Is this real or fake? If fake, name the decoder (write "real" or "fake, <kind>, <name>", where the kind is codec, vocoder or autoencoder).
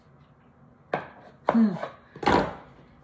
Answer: real